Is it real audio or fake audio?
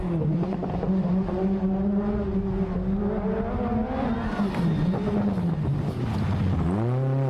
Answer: real